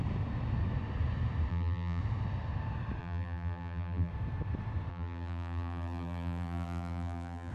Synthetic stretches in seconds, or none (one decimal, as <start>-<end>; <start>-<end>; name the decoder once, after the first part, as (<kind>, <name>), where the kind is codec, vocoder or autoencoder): 1.5-2.0 (vocoder, BigVGAN v2); 3.0-4.1; 4.9-7.5